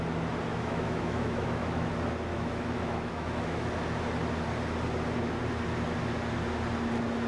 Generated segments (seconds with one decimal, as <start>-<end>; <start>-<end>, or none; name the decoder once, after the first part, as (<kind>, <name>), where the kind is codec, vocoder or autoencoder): 0.5-1.9 (autoencoder, DAC-VAE); 2.3-3.7